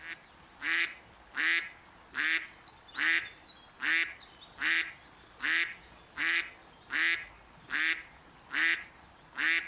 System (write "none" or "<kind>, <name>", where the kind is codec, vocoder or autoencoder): none